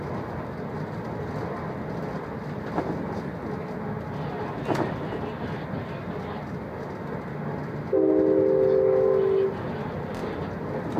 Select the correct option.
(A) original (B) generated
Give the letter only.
A